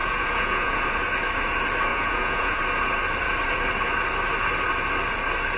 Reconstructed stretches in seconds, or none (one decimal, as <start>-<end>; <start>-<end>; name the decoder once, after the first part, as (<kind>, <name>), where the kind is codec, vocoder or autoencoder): 0.0-0.8 (vocoder, Vocos); 1.9-2.6